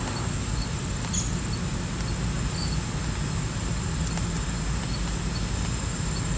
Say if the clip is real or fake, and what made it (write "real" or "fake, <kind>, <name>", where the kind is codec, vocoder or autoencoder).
real